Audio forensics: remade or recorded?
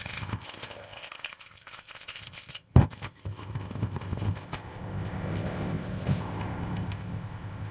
remade